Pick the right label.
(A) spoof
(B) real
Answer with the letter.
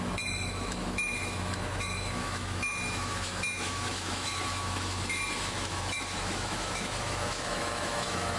A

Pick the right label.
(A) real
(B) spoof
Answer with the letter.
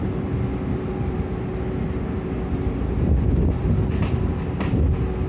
A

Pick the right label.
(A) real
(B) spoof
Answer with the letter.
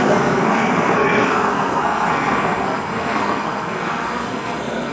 B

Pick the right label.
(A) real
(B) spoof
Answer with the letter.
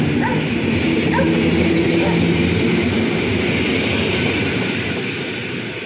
A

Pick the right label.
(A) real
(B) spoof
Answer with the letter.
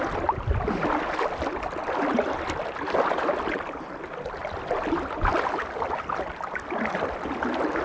A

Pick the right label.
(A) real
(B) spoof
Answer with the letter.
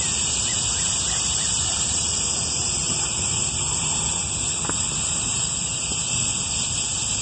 A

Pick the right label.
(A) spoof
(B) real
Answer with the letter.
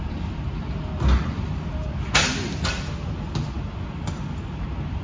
B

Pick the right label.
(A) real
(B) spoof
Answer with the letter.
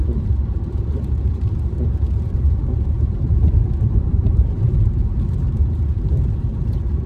B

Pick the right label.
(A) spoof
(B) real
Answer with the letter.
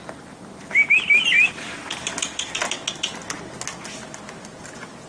B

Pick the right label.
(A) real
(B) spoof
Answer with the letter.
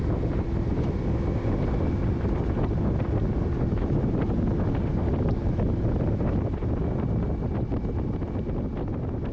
A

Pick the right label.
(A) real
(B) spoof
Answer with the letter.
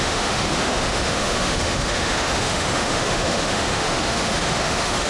B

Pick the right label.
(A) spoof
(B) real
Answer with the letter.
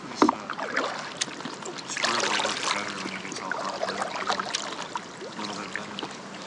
B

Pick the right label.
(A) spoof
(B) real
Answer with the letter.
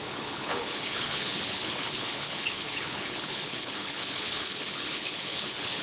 A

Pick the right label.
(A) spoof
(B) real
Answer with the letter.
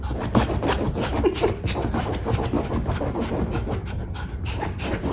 B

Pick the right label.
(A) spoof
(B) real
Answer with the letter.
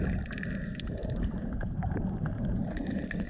B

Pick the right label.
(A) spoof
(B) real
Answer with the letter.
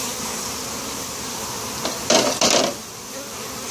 B